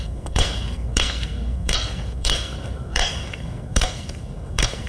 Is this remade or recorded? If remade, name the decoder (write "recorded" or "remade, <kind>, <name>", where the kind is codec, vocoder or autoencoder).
remade, codec, SNAC